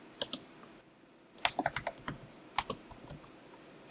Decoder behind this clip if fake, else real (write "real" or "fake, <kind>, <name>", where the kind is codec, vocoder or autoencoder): real